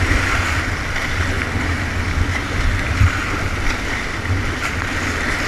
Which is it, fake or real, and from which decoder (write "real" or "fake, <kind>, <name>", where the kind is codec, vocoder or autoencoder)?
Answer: real